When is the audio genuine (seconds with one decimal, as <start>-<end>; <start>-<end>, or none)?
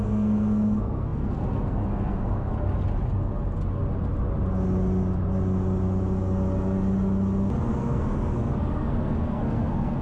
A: 2.5-7.7